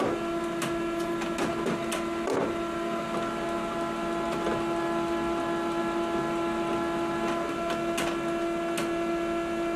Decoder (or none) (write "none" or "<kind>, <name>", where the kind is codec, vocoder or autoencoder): none